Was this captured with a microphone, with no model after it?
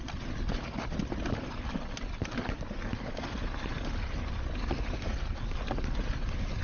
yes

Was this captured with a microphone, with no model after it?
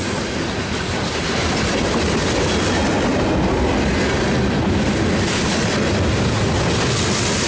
yes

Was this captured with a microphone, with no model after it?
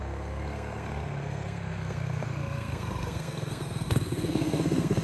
no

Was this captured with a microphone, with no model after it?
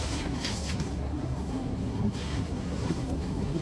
no